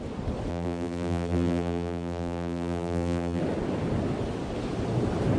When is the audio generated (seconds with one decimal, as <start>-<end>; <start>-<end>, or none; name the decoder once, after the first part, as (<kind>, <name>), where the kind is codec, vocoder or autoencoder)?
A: 0.5-3.4 (vocoder, BigVGAN v2)